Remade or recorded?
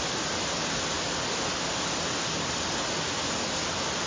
recorded